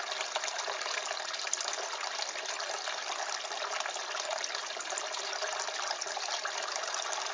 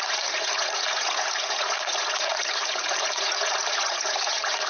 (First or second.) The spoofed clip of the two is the second